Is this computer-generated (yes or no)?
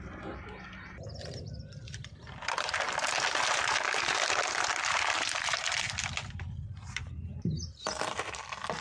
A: no